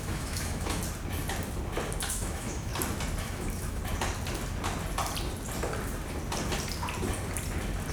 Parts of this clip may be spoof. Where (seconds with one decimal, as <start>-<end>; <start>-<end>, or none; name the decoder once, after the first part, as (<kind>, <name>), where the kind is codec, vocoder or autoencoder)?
0.0-0.8 (autoencoder, DAC-VAE); 2.1-2.7; 3.2-3.8